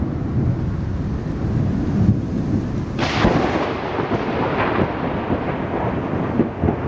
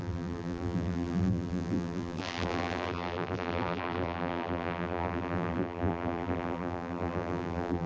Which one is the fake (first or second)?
second